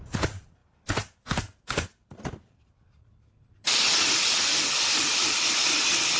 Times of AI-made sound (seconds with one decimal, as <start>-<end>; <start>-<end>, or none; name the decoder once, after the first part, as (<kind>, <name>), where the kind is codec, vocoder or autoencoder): none